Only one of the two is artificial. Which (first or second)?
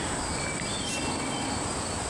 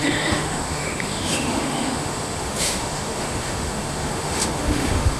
second